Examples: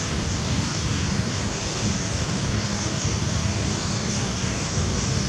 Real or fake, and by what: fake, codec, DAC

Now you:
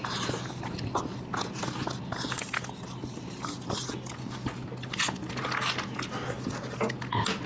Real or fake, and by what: real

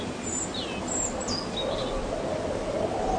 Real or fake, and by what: real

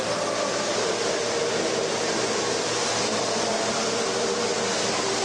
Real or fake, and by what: real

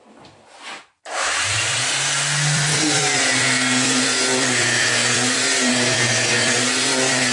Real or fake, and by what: fake, vocoder, BigVGAN v2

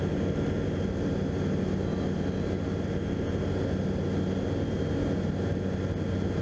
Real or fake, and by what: real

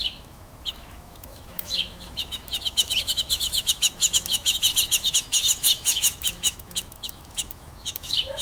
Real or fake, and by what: fake, autoencoder, DAC-VAE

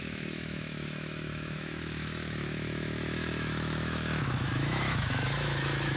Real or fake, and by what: fake, autoencoder, DAC-VAE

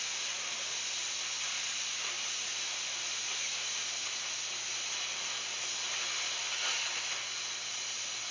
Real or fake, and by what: real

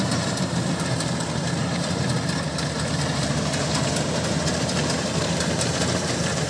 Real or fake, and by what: fake, vocoder, BigVGAN v2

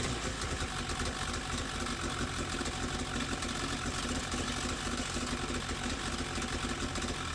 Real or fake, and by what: real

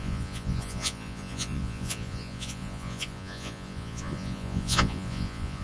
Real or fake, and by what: fake, vocoder, Vocos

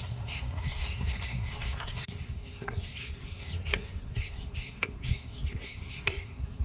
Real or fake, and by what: fake, codec, SNAC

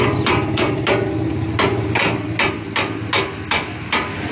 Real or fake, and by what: real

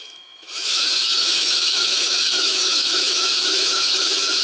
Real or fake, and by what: fake, autoencoder, DAC-VAE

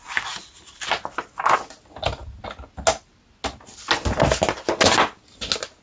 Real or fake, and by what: real